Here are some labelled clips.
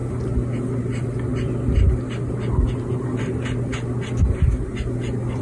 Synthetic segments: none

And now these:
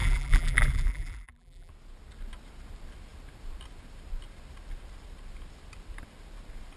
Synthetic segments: 0.0-1.7 (vocoder, BigVGAN v2)

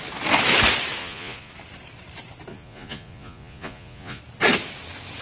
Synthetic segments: 1.0-1.5 (vocoder, Vocos); 2.5-4.2

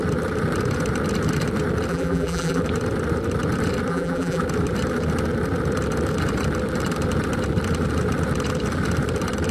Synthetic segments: 1.9-2.6 (vocoder, BigVGAN v2); 3.9-4.4